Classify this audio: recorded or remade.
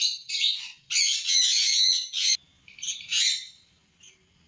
recorded